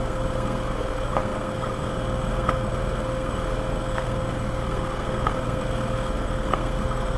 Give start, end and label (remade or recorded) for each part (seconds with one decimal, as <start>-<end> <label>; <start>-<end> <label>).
0.0-7.2 remade